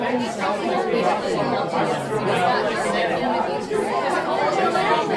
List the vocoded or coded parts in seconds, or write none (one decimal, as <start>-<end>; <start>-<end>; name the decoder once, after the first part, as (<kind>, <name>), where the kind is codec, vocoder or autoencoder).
none

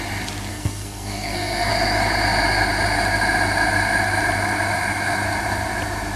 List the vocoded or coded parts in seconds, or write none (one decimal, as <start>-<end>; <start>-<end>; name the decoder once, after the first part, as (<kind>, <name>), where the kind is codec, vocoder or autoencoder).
0.5-1.7 (codec, SNAC)

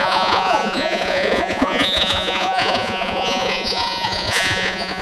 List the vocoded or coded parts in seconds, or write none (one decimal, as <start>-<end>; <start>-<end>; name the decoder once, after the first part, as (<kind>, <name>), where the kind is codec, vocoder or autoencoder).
0.0-5.0 (vocoder, Vocos)

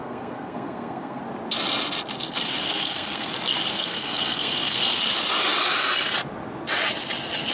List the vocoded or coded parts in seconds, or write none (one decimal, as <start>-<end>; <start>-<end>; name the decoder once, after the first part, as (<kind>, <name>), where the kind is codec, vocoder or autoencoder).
0.0-1.2 (codec, SNAC); 2.7-3.3; 3.7-5.0

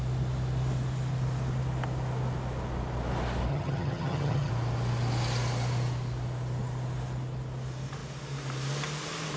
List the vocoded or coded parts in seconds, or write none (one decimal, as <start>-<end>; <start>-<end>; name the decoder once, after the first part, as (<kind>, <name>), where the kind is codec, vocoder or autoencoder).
3.5-4.5 (vocoder, HiFi-GAN)

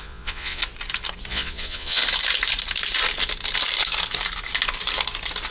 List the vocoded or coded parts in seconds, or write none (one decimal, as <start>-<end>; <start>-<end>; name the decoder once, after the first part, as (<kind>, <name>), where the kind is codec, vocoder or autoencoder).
0.0-0.6 (vocoder, Vocos); 1.3-2.0

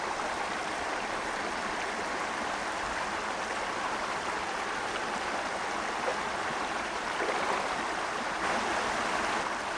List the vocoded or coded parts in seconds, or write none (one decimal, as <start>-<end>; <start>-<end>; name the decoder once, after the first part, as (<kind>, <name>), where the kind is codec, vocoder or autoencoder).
none